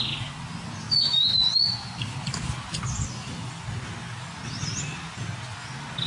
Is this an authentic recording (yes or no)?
yes